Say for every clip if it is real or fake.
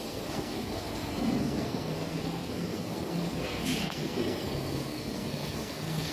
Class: fake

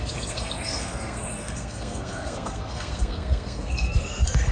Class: fake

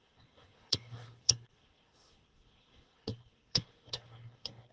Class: fake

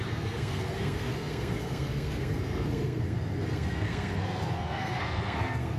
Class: fake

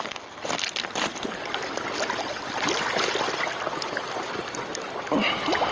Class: real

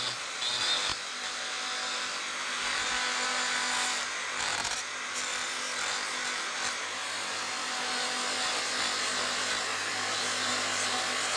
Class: real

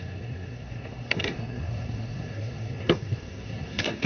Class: fake